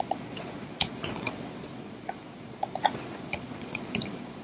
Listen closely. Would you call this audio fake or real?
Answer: fake